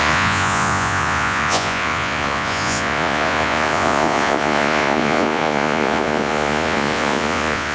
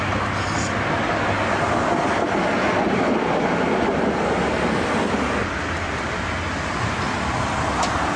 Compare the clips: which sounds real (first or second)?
second